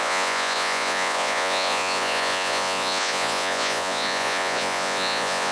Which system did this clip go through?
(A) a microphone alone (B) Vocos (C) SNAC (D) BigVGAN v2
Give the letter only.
B